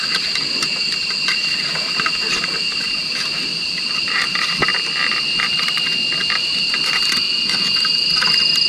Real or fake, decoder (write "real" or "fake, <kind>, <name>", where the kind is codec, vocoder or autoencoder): real